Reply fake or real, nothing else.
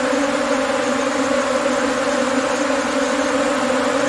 real